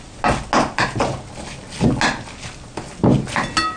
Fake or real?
real